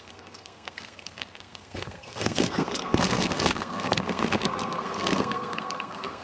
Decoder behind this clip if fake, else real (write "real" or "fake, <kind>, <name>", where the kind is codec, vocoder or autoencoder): fake, codec, SNAC